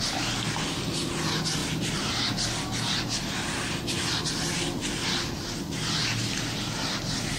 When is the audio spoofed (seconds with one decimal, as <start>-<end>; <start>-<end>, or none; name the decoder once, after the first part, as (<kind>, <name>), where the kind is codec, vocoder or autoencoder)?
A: none